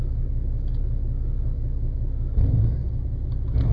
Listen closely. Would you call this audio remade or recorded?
recorded